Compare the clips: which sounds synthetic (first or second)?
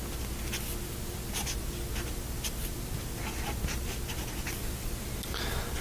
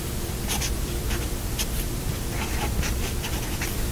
second